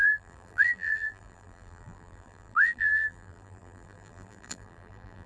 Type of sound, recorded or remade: remade